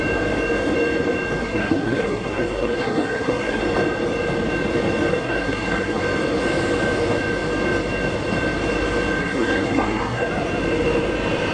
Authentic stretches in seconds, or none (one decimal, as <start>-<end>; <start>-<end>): 0.0-1.4; 3.6-5.1; 6.0-9.2; 10.3-11.5

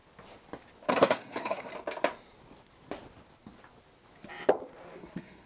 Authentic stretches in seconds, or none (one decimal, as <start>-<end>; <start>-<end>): 0.0-0.9; 1.7-5.0

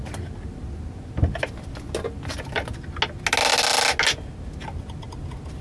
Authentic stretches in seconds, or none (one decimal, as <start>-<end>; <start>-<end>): 0.0-5.6

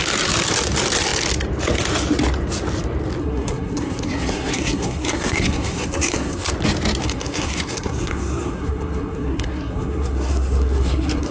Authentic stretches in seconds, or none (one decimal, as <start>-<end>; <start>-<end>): 0.0-3.2; 6.5-7.0

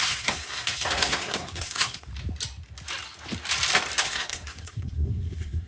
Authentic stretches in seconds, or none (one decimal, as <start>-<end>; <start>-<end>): 2.1-4.0

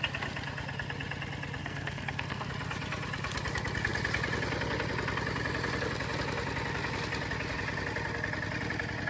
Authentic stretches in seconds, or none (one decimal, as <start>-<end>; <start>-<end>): 0.0-1.6; 2.5-9.1